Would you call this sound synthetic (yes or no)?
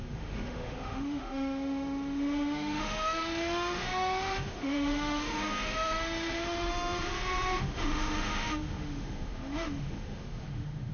yes